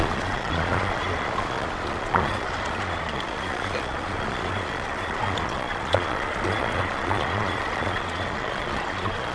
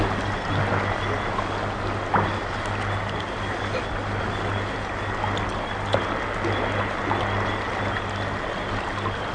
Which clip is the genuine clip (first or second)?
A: second